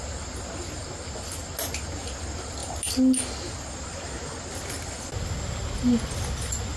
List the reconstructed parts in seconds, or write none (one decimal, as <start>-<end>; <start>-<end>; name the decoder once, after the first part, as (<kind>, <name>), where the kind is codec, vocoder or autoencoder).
none